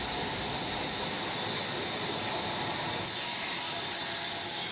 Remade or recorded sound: recorded